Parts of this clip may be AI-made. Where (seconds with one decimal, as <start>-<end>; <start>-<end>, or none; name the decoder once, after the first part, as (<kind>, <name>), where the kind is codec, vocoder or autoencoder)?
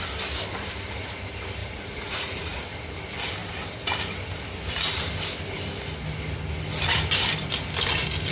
1.6-2.7 (vocoder, Vocos)